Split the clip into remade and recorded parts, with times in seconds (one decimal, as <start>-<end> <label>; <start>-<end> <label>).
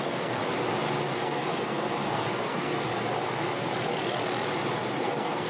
0.0-0.4 remade; 0.4-1.1 recorded; 1.1-2.9 remade; 2.9-5.0 recorded; 5.0-5.5 remade